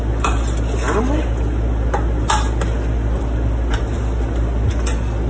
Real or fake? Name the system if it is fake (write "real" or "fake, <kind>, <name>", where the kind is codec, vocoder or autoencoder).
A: real